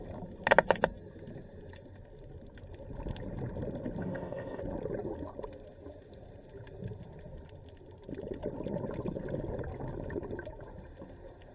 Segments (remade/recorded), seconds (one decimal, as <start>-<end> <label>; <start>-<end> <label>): 0.0-4.0 recorded; 4.0-4.6 remade; 4.6-11.5 recorded